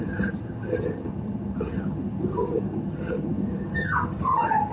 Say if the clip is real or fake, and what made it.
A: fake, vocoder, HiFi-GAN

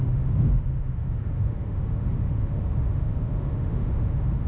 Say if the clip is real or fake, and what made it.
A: fake, autoencoder, DAC-VAE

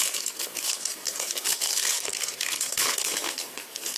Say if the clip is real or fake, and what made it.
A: fake, codec, SNAC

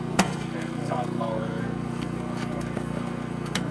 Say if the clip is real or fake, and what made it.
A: fake, codec, SNAC